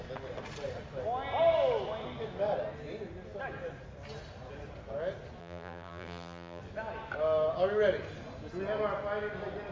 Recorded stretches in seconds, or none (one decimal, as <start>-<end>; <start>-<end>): 0.0-5.4; 6.6-9.7